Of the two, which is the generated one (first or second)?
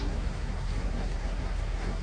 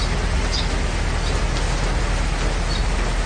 first